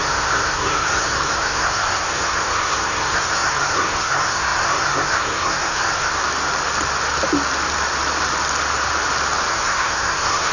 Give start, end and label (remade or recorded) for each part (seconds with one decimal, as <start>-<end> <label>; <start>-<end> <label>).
0.0-6.1 remade; 6.1-9.5 recorded; 9.5-10.5 remade

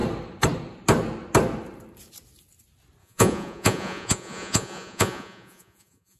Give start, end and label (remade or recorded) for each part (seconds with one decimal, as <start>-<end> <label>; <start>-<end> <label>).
0.0-3.0 recorded; 3.0-6.2 remade

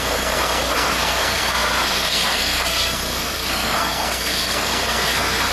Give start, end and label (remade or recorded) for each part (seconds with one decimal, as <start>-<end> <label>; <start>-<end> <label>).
0.0-5.5 remade

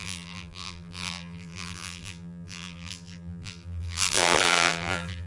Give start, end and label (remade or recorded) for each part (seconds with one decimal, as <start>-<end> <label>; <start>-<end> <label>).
0.0-5.3 remade

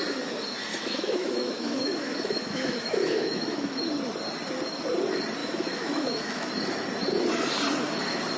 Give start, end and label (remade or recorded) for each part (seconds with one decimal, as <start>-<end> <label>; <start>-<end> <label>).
0.0-0.7 recorded; 0.7-3.9 remade; 3.9-5.4 recorded; 5.4-6.5 remade; 6.5-8.4 recorded

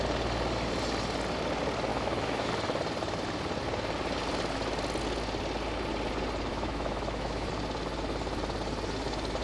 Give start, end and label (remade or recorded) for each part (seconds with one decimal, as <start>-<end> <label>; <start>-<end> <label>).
0.0-1.9 recorded; 1.9-2.5 remade; 2.5-6.5 recorded; 6.5-7.5 remade; 7.5-9.4 recorded

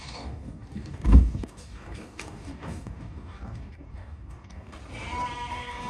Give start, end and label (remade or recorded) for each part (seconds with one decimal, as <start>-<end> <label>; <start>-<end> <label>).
0.0-4.8 remade; 4.8-5.5 recorded; 5.5-5.9 remade